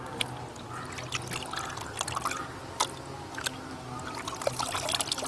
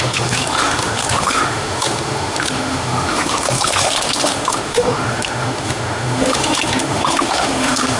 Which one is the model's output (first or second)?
second